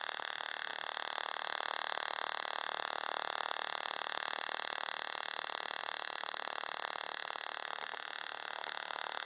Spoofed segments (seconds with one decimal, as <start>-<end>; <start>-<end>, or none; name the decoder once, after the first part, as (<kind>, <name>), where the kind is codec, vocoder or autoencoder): none